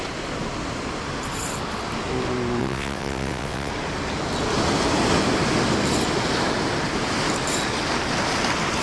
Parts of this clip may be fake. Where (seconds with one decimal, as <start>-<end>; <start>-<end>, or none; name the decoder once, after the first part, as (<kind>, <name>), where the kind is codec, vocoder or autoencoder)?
2.6-3.7 (vocoder, WaveNeXt)